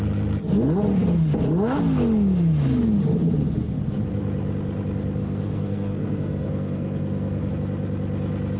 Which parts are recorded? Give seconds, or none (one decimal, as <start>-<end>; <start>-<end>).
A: 0.0-5.2; 7.5-8.6